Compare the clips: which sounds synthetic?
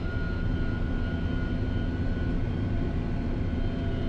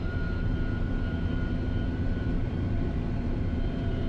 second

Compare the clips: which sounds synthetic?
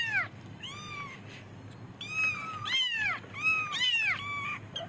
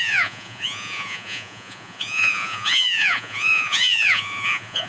second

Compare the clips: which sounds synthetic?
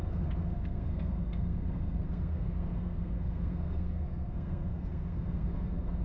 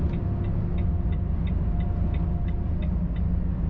first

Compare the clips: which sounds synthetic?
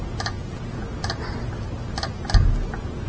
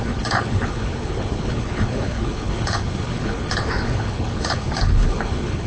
second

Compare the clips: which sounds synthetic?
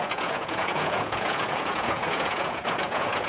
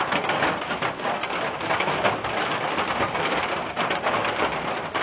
first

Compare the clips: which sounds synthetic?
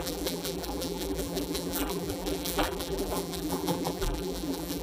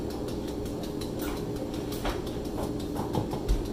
first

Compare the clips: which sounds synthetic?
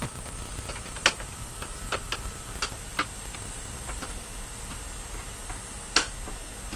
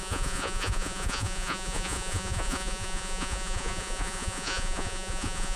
second